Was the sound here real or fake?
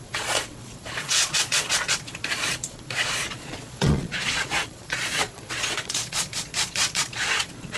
fake